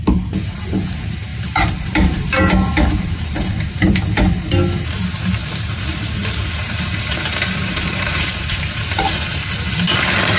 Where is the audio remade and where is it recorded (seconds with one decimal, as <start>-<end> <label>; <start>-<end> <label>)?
0.0-1.3 recorded; 1.3-3.9 remade; 3.9-5.4 recorded; 5.4-9.5 remade; 9.5-10.4 recorded